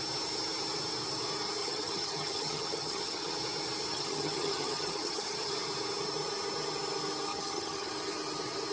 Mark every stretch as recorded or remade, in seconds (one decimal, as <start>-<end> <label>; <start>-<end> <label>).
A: 0.0-1.6 recorded; 1.6-3.3 remade; 3.3-3.9 recorded; 3.9-5.5 remade; 5.5-7.3 recorded; 7.3-7.9 remade; 7.9-8.7 recorded